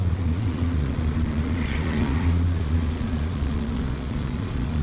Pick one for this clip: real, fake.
fake